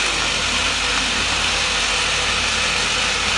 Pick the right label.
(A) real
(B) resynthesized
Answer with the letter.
A